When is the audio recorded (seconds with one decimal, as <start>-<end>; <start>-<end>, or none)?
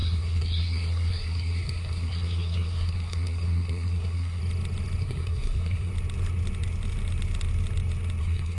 4.4-5.0; 5.9-8.2